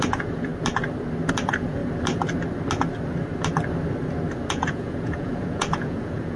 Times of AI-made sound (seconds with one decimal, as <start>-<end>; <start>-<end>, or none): 0.0-0.5; 1.4-1.8; 4.5-6.4